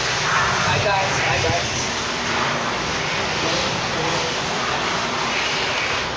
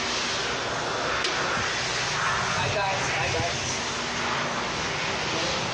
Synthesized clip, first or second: first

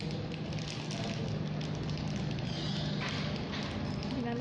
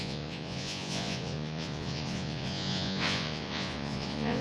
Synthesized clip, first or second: second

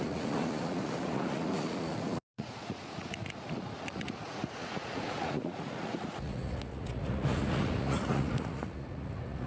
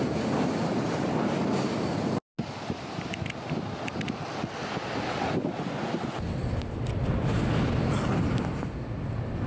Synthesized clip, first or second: first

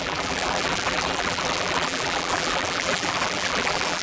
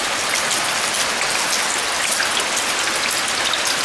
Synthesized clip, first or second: first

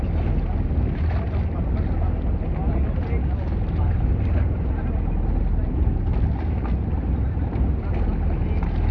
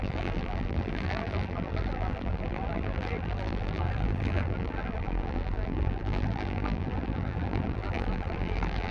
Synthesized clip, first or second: second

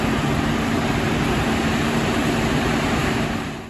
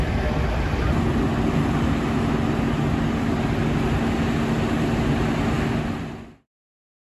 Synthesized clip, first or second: first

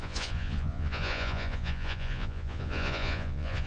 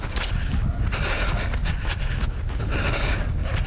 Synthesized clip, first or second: first